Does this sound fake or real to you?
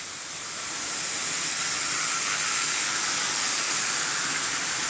real